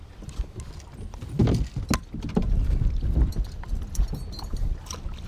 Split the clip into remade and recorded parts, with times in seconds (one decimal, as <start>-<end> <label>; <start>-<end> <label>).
0.0-3.3 recorded; 3.3-4.0 remade; 4.0-5.3 recorded